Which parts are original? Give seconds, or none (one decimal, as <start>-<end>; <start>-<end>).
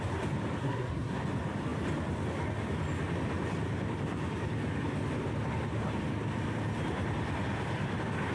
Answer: 0.0-0.6; 1.2-8.3